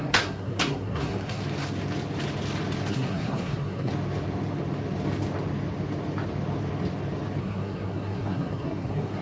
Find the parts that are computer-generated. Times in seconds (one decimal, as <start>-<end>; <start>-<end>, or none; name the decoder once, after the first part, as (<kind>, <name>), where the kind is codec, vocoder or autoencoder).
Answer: 0.0-1.4 (codec, SNAC); 2.9-3.9; 7.4-9.2